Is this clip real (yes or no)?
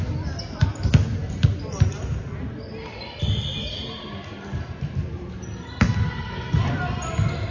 yes